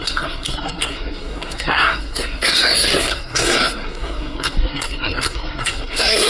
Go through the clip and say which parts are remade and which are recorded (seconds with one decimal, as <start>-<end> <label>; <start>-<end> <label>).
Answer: 0.0-6.3 remade